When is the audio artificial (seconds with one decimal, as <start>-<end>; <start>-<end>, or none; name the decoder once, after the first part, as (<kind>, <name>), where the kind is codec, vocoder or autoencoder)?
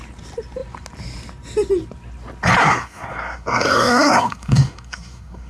2.6-5.5 (codec, SNAC)